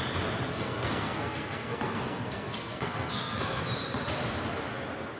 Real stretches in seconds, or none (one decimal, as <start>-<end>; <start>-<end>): 0.0-0.5; 3.6-5.2